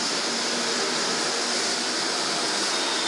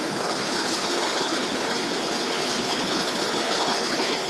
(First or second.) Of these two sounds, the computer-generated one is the second